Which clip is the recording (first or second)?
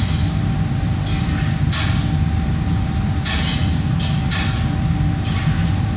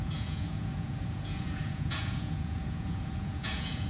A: first